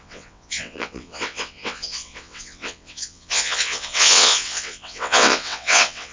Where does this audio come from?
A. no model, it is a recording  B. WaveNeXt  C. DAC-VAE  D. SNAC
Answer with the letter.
B